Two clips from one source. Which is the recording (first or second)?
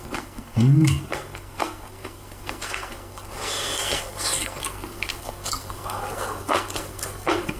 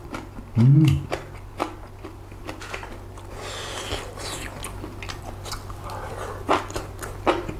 second